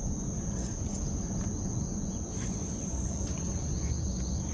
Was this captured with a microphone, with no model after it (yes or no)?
no